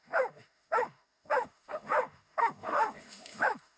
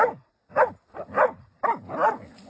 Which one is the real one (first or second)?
second